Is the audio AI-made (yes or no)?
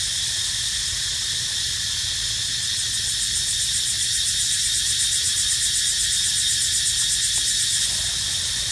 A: no